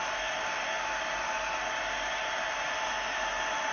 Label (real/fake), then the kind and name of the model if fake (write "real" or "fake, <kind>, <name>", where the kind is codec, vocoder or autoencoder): real